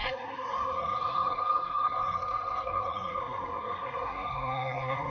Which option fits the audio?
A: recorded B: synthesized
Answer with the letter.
B